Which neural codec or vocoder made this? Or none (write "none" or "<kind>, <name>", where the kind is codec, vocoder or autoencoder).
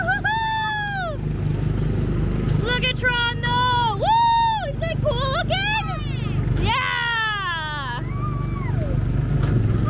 none